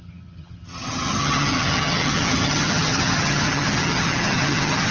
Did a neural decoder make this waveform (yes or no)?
yes